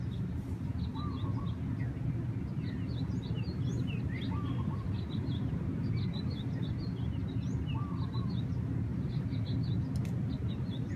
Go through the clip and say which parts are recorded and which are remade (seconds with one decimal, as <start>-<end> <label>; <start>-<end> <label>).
0.0-11.0 recorded

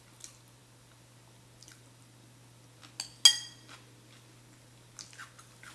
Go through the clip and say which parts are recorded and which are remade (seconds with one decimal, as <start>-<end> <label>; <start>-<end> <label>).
0.0-5.7 recorded